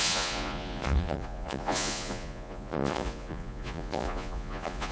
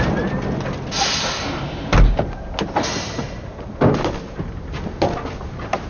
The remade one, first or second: first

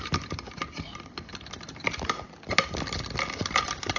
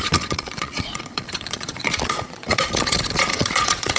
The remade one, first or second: second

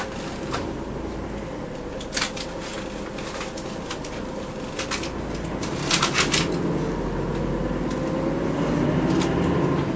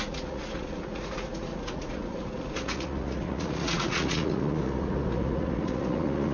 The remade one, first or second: second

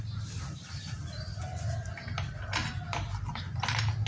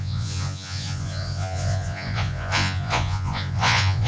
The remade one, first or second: second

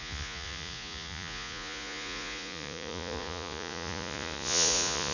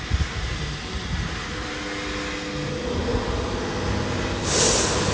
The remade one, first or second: first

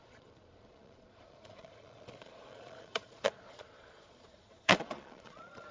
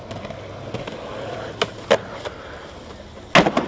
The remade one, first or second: first